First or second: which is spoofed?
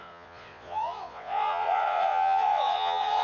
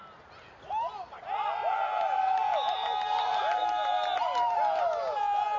first